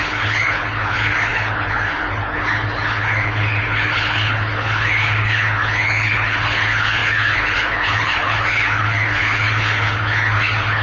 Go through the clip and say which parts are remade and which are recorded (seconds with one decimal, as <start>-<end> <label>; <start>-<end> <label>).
0.0-10.8 remade